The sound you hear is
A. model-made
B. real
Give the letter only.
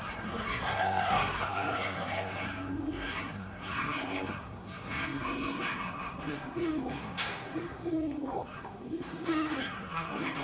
A